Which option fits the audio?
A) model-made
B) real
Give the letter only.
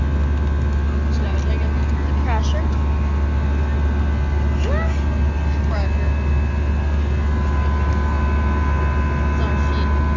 B